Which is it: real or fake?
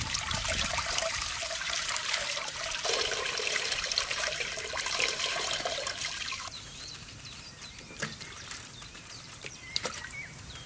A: fake